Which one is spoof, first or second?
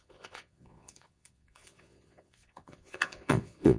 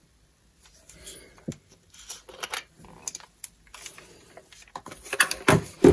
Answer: first